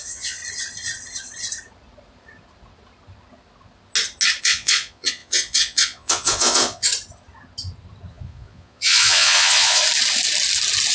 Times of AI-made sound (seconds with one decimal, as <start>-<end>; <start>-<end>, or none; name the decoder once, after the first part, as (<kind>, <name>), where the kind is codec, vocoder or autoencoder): 0.0-0.4 (vocoder, Vocos); 4.4-6.9; 8.1-9.8